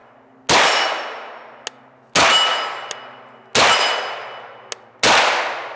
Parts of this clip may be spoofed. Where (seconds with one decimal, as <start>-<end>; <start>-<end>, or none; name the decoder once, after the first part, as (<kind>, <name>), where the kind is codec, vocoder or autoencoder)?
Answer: none